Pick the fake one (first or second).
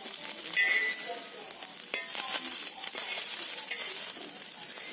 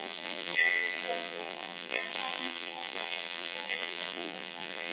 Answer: second